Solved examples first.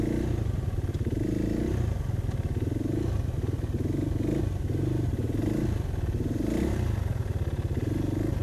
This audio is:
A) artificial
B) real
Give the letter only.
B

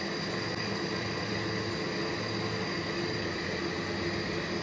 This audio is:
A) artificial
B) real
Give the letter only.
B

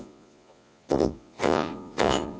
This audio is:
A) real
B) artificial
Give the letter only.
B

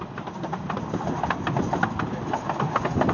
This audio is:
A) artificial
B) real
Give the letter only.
B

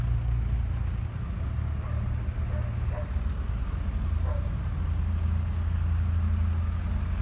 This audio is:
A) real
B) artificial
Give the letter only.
A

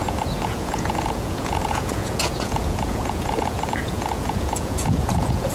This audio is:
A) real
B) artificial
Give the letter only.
B